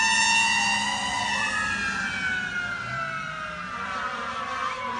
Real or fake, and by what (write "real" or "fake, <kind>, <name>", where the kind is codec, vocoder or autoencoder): real